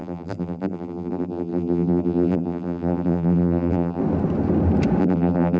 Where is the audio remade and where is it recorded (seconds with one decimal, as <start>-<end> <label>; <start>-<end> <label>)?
0.0-4.0 remade; 4.0-5.0 recorded; 5.0-5.6 remade